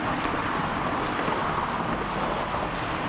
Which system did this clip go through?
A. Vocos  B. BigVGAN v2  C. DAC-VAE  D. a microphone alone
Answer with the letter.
D